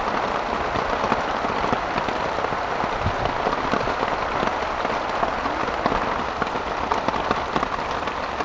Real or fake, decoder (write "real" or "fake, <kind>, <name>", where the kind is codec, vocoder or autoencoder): real